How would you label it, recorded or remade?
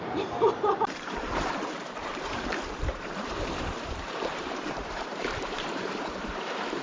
remade